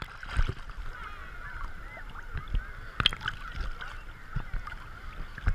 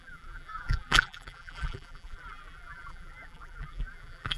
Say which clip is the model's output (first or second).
second